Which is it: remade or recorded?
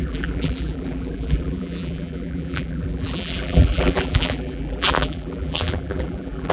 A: remade